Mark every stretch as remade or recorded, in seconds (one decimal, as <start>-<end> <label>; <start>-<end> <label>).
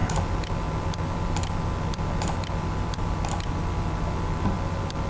0.0-5.1 recorded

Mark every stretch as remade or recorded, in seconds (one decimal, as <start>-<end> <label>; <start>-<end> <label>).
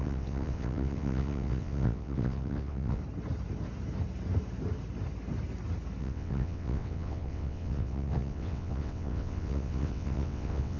0.0-3.0 remade; 3.0-6.0 recorded; 6.0-10.8 remade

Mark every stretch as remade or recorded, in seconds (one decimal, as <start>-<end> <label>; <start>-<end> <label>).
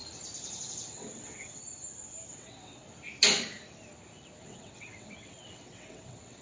0.0-0.9 recorded; 0.9-1.6 remade; 1.6-2.3 recorded; 2.3-2.8 remade; 2.8-4.4 recorded; 4.4-6.4 remade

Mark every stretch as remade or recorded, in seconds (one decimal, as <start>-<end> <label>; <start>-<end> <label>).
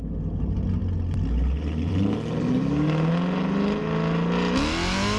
0.0-5.2 recorded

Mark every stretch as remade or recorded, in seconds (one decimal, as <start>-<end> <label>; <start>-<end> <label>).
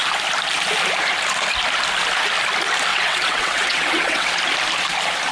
0.0-2.9 recorded; 2.9-4.3 remade; 4.3-5.3 recorded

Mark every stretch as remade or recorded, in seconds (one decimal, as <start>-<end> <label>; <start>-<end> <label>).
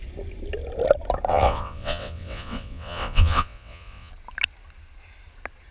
0.0-1.3 recorded; 1.3-4.1 remade; 4.1-5.7 recorded